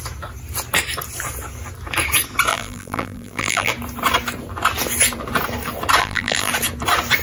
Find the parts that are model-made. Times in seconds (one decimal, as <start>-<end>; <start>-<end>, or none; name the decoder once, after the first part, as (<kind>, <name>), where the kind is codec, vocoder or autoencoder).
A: 2.5-3.7 (vocoder, BigVGAN v2); 6.0-6.5